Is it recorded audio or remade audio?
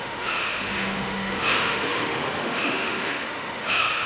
remade